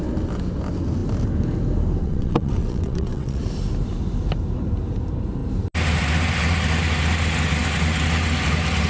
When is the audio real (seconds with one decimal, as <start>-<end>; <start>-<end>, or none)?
0.0-2.0; 3.4-8.9